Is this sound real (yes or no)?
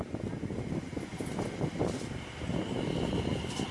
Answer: yes